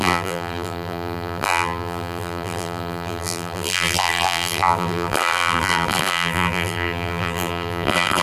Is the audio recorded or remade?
remade